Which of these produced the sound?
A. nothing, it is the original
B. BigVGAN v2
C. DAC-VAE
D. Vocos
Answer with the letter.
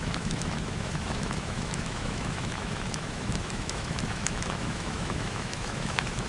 C